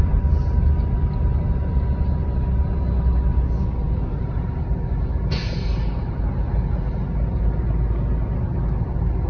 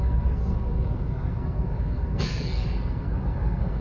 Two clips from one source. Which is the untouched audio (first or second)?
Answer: first